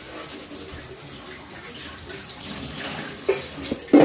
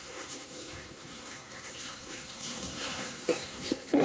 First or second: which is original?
first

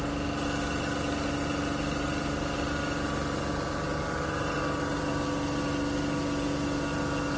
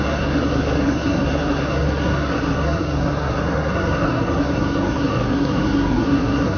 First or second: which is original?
first